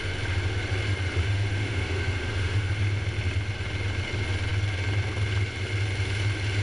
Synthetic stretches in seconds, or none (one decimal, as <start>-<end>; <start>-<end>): 1.2-2.7